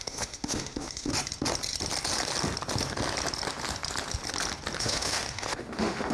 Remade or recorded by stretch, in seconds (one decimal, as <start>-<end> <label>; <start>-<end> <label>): 0.0-1.1 remade; 1.1-4.8 recorded; 4.8-6.1 remade